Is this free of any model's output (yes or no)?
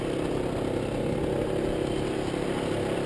yes